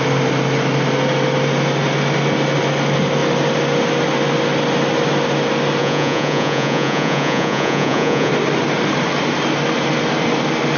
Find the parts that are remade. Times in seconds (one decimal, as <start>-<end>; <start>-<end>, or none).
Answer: 5.8-8.3